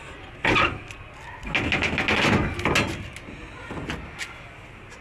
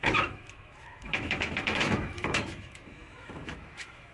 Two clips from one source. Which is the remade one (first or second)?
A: second